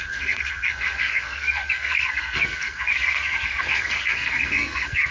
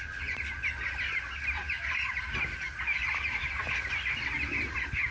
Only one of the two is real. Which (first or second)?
second